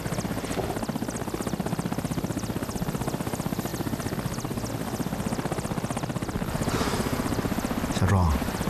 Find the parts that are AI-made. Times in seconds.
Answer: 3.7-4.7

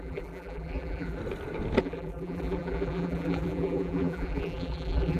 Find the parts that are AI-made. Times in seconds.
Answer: 0.0-1.2; 1.8-5.2